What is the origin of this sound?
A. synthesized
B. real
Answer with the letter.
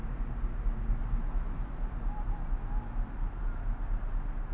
B